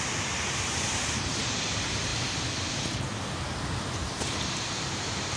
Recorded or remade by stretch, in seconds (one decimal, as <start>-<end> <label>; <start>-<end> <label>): 0.0-2.1 remade; 2.1-3.8 recorded; 3.8-5.4 remade